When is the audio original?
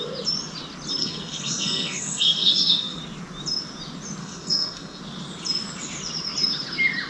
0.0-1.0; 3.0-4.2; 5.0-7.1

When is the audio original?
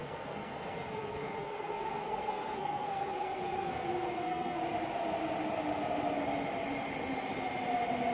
4.6-8.1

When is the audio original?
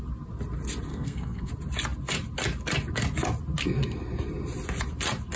0.0-0.9; 1.5-5.4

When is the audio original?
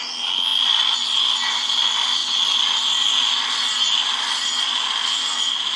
0.0-5.8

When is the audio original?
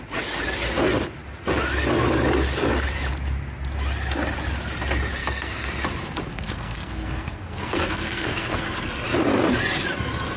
0.0-5.2; 5.7-6.3; 8.9-10.4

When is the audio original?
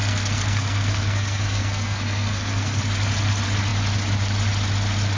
2.8-5.2